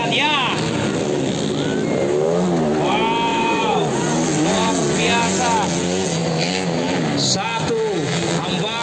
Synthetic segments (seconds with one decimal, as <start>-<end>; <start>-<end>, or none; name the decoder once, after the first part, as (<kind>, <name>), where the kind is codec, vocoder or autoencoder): 3.3-4.0 (vocoder, Vocos)

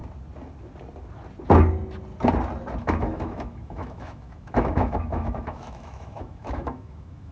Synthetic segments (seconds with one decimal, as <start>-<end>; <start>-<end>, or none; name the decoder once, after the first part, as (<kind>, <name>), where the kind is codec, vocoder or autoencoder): 2.8-7.3 (autoencoder, DAC-VAE)